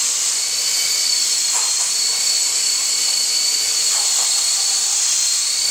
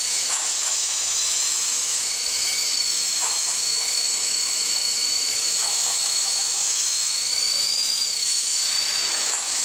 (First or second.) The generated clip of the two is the second